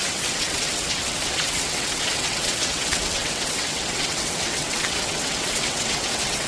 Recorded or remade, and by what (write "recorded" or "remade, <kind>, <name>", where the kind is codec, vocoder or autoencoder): remade, vocoder, WaveNeXt